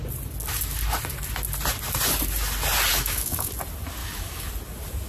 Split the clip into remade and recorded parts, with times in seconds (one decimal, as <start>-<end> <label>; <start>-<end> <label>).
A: 0.0-2.9 recorded; 2.9-3.5 remade; 3.5-4.0 recorded; 4.0-4.5 remade; 4.5-5.1 recorded